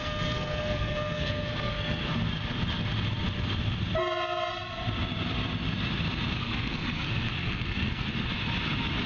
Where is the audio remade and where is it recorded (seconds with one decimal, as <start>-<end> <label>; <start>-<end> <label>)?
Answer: 0.0-2.1 remade; 2.1-6.4 recorded; 6.4-8.1 remade; 8.1-9.1 recorded